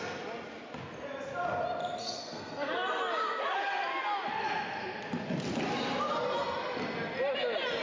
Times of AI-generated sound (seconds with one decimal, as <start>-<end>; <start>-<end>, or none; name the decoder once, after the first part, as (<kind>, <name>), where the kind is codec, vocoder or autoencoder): 2.0-3.0 (codec, SNAC)